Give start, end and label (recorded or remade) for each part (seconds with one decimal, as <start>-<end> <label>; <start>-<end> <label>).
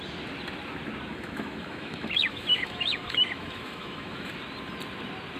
0.0-1.1 recorded; 1.1-4.3 remade; 4.3-5.4 recorded